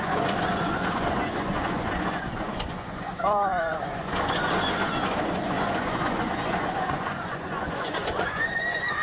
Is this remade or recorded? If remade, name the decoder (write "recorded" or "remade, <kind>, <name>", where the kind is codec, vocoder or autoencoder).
remade, vocoder, Vocos